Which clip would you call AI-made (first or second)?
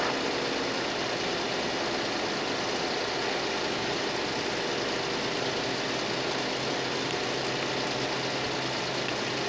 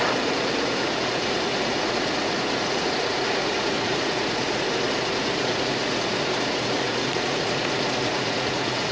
second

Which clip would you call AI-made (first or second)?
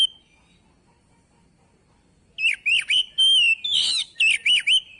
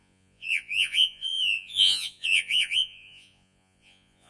second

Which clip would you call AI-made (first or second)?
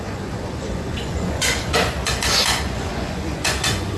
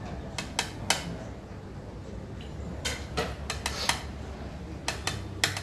first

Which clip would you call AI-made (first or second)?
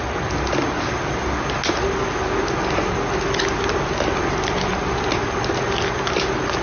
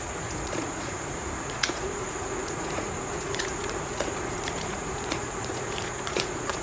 second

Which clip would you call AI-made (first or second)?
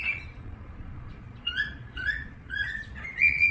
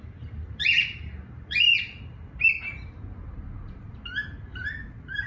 first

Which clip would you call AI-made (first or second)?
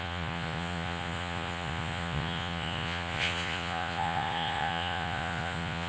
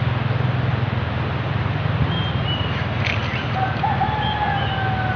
first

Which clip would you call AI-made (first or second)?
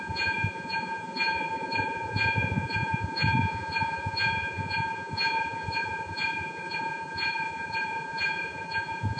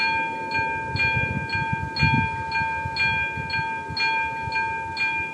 first